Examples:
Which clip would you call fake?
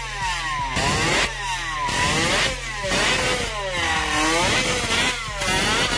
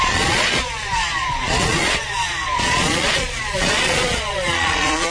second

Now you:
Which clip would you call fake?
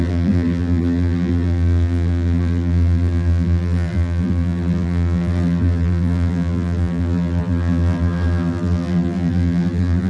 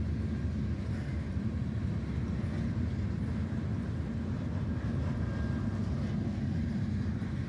first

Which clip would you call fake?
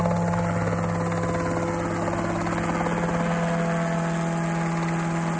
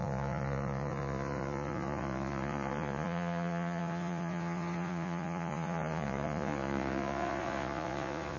second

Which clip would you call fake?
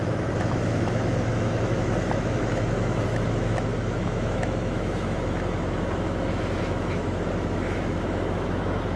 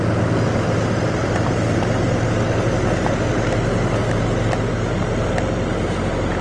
first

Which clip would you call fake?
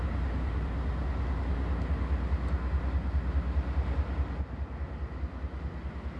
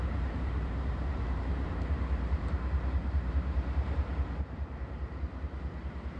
second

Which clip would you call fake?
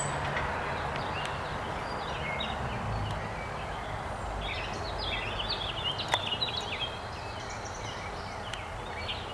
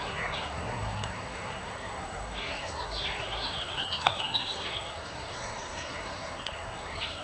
second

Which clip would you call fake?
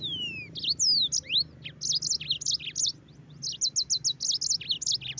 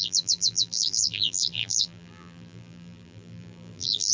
second